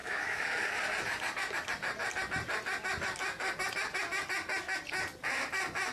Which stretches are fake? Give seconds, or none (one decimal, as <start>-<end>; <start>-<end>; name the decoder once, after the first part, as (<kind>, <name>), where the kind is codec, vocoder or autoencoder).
0.0-0.7 (autoencoder, DAC-VAE)